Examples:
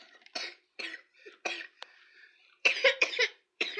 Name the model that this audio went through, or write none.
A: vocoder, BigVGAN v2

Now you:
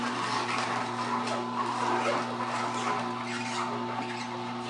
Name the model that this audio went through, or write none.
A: vocoder, BigVGAN v2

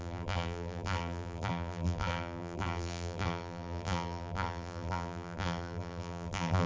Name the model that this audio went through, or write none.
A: vocoder, BigVGAN v2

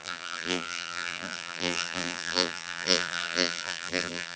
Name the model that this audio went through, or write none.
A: vocoder, BigVGAN v2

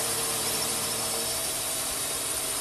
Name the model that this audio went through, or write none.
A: vocoder, BigVGAN v2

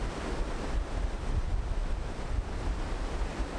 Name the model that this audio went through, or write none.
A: none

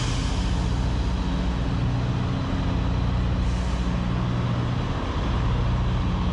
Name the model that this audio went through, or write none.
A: none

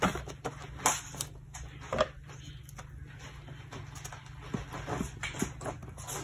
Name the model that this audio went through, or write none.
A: none